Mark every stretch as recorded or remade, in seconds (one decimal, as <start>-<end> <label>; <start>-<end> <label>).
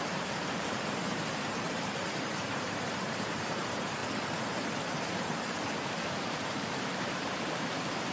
0.0-4.0 remade; 4.0-5.1 recorded; 5.1-8.1 remade